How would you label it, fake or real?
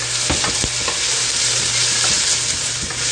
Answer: real